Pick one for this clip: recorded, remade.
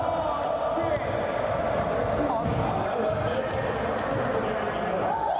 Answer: recorded